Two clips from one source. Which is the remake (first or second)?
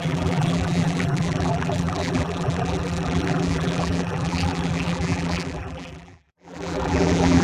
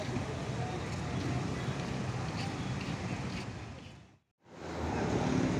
first